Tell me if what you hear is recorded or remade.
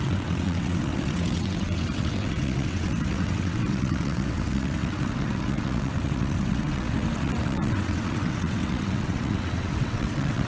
remade